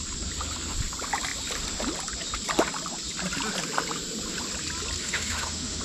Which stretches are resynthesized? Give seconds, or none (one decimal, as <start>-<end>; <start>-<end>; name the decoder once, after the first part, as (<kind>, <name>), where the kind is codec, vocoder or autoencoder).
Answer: 5.0-5.8 (autoencoder, DAC-VAE)